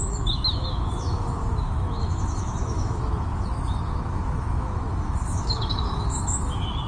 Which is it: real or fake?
fake